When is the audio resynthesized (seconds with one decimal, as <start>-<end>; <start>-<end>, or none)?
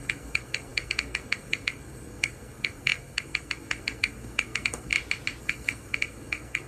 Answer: 0.0-4.9; 5.4-6.7